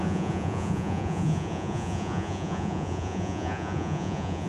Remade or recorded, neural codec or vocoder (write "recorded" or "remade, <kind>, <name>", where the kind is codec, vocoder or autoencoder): remade, vocoder, Vocos